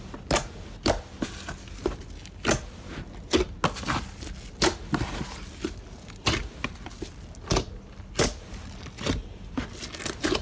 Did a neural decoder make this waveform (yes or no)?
no